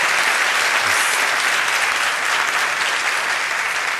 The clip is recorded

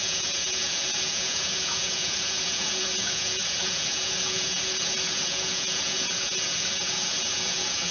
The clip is remade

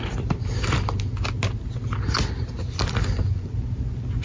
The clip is recorded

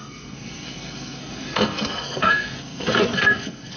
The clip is remade